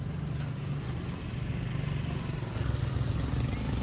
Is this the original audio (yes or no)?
yes